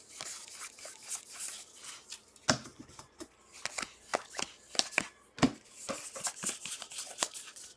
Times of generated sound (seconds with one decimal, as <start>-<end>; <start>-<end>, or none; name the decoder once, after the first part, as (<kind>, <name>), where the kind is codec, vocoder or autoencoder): 2.7-3.3 (vocoder, Vocos)